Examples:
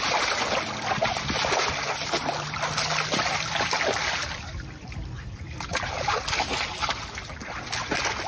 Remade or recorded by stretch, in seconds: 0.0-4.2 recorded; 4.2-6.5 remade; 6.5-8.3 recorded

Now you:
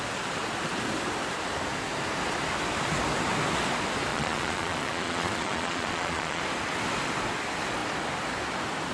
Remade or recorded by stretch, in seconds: 0.0-4.1 recorded; 4.1-6.4 remade; 6.4-8.9 recorded

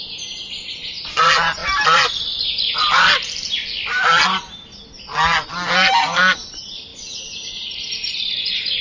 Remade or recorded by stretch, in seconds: 0.0-1.6 recorded; 1.6-2.4 remade; 2.4-6.9 recorded; 6.9-7.9 remade; 7.9-8.8 recorded

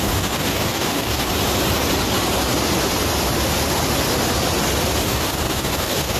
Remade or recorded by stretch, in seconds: 0.0-1.3 remade; 1.3-5.0 recorded; 5.0-6.2 remade